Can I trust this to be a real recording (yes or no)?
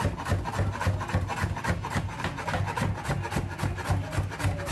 yes